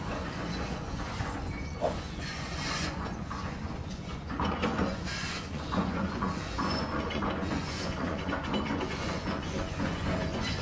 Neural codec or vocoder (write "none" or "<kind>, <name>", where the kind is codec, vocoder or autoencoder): vocoder, Vocos